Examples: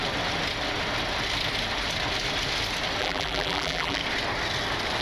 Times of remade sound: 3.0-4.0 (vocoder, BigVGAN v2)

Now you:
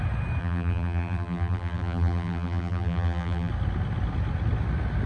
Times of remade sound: 0.4-3.5 (vocoder, BigVGAN v2)